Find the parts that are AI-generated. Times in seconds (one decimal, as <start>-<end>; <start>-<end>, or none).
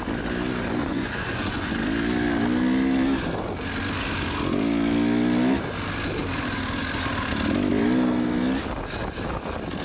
0.8-1.7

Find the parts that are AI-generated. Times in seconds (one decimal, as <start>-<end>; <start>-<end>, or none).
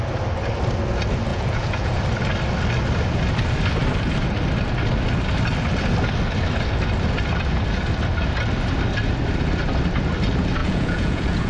1.3-2.0; 10.6-11.5